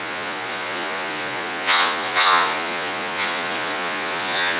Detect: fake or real fake